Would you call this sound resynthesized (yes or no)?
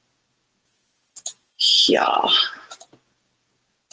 yes